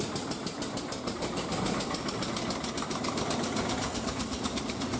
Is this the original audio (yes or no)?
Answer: no